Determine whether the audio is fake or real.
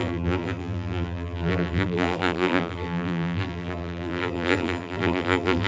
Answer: fake